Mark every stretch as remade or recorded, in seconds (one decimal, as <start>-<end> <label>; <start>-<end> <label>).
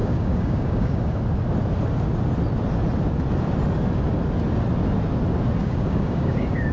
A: 0.0-1.2 remade; 1.2-5.6 recorded; 5.6-6.7 remade